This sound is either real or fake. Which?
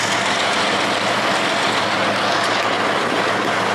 real